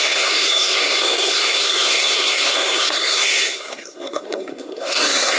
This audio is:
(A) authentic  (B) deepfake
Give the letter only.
B